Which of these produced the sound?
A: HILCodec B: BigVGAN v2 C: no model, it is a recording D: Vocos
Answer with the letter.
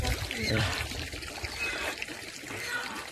B